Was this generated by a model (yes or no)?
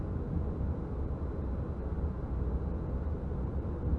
no